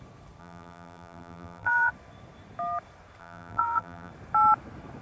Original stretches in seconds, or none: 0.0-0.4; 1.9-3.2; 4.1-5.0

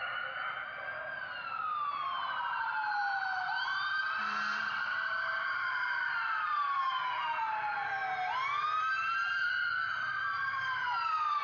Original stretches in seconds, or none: 0.0-10.3